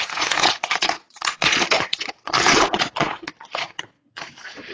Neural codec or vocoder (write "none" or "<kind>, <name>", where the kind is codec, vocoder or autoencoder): vocoder, Vocos